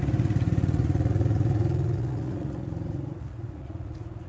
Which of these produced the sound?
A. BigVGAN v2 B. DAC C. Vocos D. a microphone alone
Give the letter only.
C